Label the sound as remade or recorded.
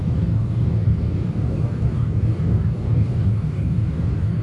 remade